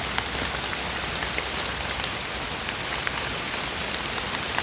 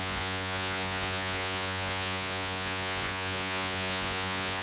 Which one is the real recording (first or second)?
first